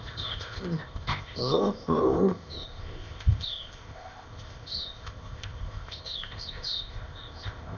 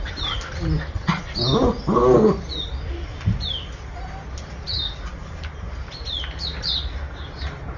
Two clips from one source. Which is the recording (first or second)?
second